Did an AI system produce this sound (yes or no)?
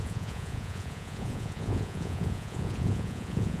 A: yes